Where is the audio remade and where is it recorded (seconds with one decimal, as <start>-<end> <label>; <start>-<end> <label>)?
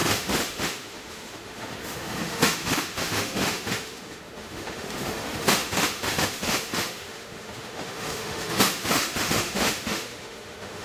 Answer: 0.0-10.8 remade